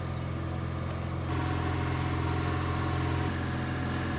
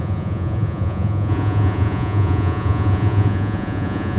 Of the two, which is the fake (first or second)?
second